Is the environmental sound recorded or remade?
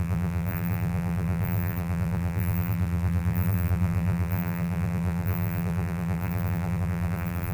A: remade